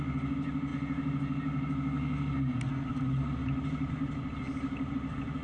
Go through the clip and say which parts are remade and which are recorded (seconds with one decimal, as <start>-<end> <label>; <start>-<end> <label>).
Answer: 0.0-5.4 recorded

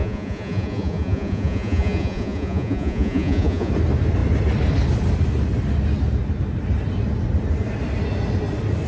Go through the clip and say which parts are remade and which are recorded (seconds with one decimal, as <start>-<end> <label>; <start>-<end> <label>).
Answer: 0.0-3.7 remade; 3.7-8.9 recorded

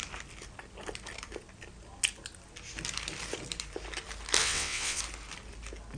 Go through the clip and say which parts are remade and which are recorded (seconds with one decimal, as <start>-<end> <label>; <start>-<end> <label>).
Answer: 0.0-4.4 recorded; 4.4-5.0 remade; 5.0-6.0 recorded